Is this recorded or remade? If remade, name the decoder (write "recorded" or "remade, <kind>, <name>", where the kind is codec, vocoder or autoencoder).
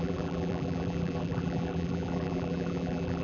remade, vocoder, BigVGAN v2